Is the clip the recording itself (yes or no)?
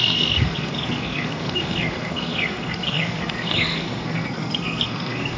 no